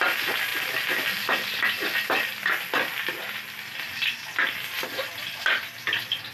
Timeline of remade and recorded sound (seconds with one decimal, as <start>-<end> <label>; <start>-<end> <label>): 0.0-6.3 recorded